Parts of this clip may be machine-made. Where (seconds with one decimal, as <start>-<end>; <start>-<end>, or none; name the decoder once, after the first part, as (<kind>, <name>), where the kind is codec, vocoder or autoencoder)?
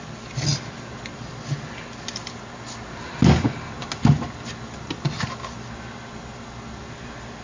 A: none